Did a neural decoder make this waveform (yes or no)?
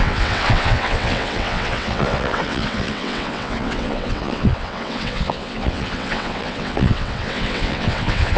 yes